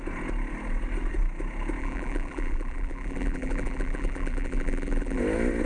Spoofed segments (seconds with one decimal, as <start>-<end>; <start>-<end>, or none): 1.8-5.2